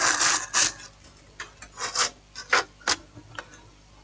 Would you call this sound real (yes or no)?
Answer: yes